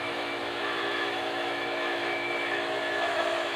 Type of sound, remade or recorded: remade